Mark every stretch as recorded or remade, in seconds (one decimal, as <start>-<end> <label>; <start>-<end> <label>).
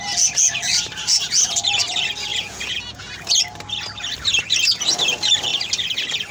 0.0-2.3 recorded; 2.3-3.4 remade; 3.4-6.3 recorded